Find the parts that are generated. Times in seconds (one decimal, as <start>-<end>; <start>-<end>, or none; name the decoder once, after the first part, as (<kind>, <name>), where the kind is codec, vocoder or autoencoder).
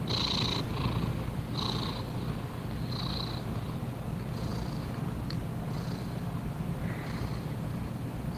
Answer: none